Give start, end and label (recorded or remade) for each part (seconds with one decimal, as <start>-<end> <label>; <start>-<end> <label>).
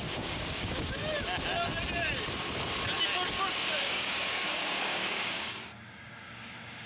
0.0-1.0 remade; 1.0-3.3 recorded; 3.3-6.9 remade